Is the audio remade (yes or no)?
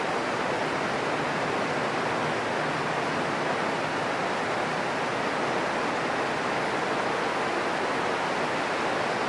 no